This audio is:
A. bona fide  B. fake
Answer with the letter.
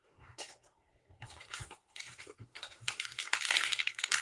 B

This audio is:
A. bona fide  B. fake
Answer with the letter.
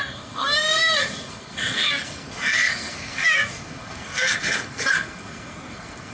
B